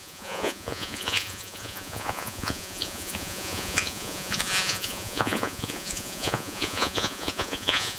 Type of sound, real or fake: fake